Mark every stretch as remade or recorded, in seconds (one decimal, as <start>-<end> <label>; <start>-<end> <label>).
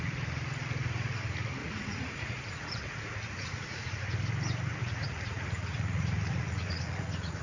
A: 0.0-1.6 recorded; 1.6-4.0 remade; 4.0-4.8 recorded; 4.8-7.4 remade